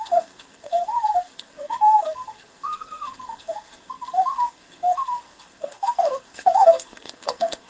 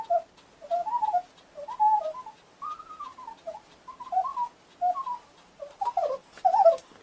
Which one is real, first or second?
second